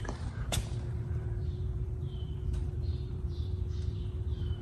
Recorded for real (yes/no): no